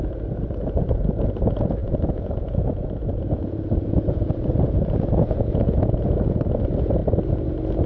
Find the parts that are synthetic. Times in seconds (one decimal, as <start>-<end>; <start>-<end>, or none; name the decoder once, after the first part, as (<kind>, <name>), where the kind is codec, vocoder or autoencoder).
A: 1.8-6.5 (vocoder, Vocos)